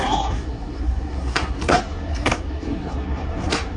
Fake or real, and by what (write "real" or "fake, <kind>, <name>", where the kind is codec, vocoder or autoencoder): fake, codec, SNAC